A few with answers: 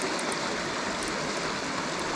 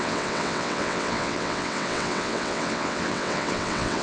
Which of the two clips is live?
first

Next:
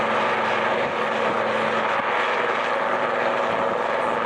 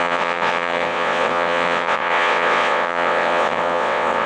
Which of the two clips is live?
first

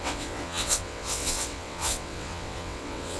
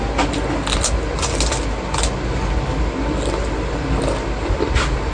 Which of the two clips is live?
second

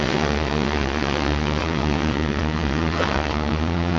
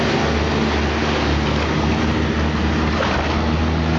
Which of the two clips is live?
second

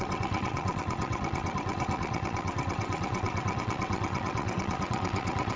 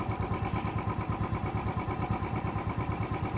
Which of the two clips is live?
second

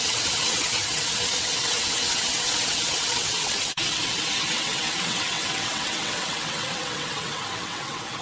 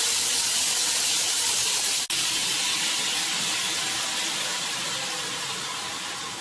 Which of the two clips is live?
second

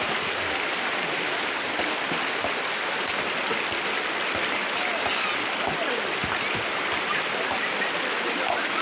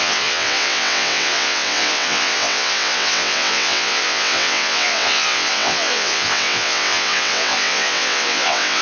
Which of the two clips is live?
first